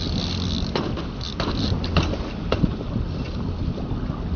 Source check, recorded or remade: recorded